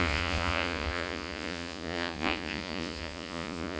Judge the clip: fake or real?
fake